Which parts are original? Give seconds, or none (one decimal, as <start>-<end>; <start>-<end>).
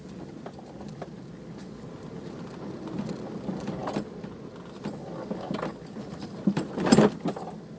0.0-7.8